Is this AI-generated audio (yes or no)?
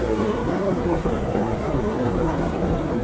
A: yes